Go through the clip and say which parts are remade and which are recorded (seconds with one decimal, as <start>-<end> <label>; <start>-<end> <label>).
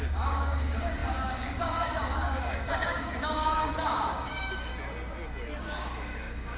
0.0-4.7 remade; 4.7-5.6 recorded; 5.6-6.6 remade